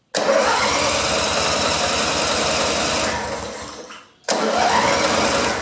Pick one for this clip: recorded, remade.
recorded